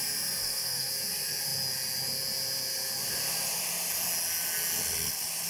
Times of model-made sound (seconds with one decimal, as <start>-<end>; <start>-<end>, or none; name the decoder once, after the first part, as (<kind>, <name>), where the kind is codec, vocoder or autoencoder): 0.4-0.9 (codec, SNAC)